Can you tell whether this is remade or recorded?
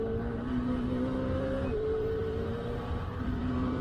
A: remade